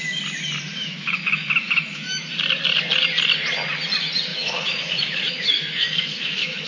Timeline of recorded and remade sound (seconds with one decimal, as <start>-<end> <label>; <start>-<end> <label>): 0.0-0.7 recorded; 0.7-2.3 remade; 2.3-4.3 recorded; 4.3-6.7 remade